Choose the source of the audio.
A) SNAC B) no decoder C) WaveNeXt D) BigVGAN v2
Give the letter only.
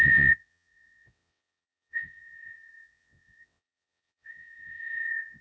C